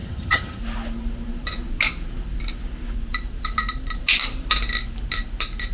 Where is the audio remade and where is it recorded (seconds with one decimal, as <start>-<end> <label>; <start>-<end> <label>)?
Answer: 0.0-0.6 remade; 0.6-5.7 recorded